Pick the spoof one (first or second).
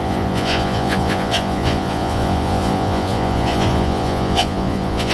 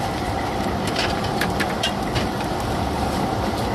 first